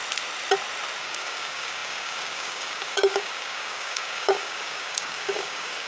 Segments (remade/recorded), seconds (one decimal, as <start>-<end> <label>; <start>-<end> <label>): 0.0-1.0 recorded; 1.0-5.9 remade